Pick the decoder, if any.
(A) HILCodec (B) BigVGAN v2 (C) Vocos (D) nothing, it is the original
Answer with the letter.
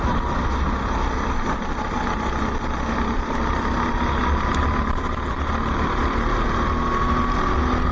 D